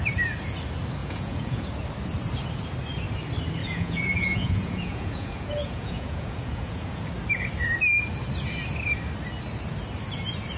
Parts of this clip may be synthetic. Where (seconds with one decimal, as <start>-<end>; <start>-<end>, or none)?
1.0-1.7; 3.6-7.0